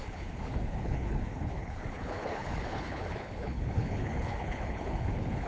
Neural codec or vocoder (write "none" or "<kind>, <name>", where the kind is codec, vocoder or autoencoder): codec, HILCodec